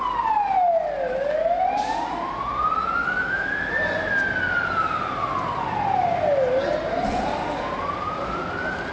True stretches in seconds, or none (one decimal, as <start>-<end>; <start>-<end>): 0.0-3.0; 3.7-8.9